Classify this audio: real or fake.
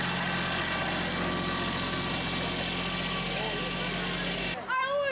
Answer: real